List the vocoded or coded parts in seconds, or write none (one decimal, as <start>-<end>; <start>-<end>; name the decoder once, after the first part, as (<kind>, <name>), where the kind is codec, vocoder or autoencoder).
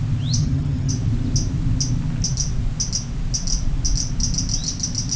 0.4-0.9 (vocoder, HiFi-GAN)